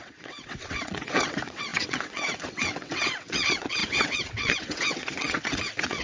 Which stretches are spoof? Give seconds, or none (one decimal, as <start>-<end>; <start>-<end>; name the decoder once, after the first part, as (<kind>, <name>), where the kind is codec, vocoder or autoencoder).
0.0-6.0 (vocoder, WaveNeXt)